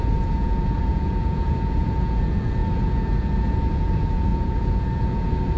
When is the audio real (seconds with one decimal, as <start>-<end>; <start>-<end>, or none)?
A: none